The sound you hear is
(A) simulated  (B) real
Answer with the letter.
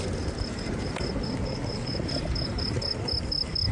B